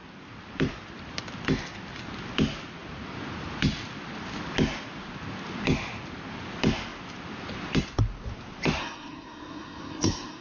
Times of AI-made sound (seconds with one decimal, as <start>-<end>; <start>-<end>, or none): 8.8-10.4

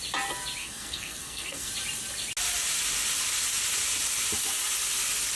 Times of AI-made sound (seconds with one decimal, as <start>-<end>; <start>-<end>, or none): 0.6-1.7